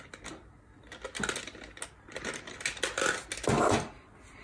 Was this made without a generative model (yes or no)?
yes